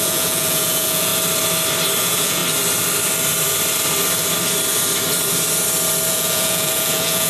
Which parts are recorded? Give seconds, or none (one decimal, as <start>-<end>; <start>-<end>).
1.1-2.0; 2.4-6.1